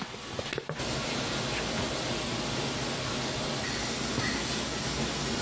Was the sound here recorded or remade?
recorded